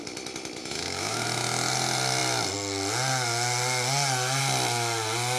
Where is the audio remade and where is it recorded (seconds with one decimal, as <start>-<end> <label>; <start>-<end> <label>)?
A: 0.0-0.6 recorded; 0.6-1.2 remade; 1.2-5.4 recorded